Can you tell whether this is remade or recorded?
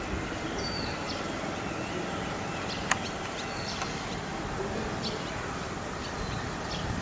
recorded